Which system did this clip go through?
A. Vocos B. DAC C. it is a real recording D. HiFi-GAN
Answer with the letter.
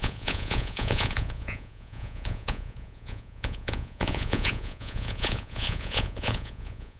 A